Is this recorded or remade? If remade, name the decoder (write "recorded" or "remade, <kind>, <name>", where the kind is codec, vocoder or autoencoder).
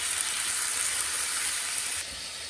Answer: recorded